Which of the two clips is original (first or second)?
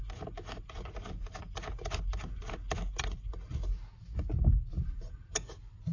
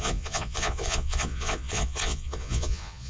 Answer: first